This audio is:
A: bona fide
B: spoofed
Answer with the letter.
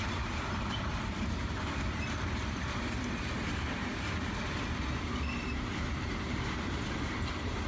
B